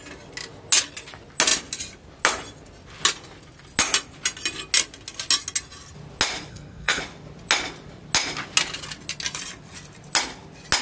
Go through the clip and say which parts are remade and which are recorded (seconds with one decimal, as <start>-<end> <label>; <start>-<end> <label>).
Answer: 0.0-6.5 recorded; 6.5-7.0 remade; 7.0-10.8 recorded

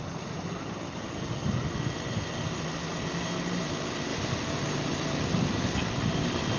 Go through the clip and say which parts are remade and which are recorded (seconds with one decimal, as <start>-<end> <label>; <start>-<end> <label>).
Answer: 0.0-4.1 recorded; 4.1-6.6 remade